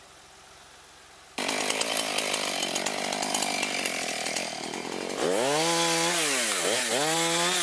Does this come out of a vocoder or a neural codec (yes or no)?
no